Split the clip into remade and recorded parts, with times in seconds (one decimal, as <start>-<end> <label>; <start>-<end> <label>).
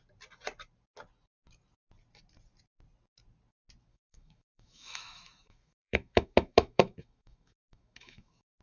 0.0-3.9 recorded; 3.9-8.6 remade